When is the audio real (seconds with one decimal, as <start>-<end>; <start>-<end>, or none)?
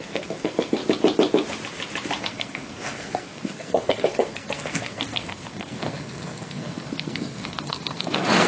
0.8-2.2